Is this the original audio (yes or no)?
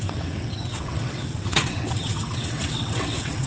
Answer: no